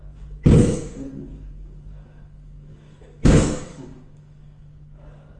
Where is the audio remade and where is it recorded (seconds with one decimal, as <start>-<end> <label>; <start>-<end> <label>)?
0.0-5.4 remade